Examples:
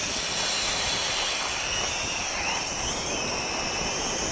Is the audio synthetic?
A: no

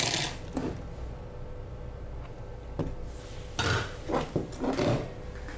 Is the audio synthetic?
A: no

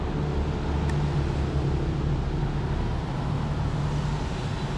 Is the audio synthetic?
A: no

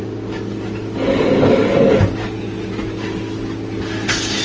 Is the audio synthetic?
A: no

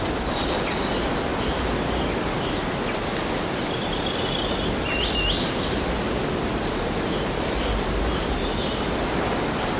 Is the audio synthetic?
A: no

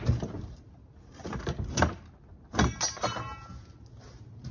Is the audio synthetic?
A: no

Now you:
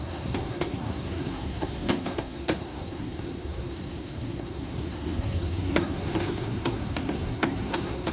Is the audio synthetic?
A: yes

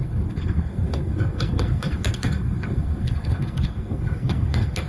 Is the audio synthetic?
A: yes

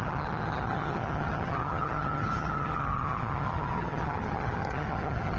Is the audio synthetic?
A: yes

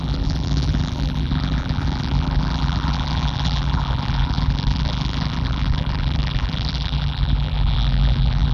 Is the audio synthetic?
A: yes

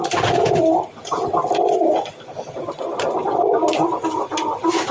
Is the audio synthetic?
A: no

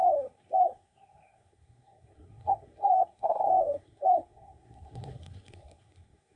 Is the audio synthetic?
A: yes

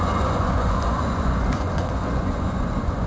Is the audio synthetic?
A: yes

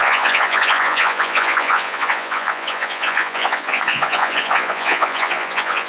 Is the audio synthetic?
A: yes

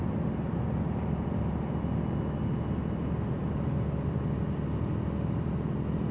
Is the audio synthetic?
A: no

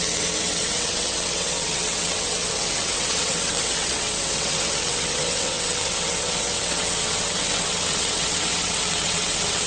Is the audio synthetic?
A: yes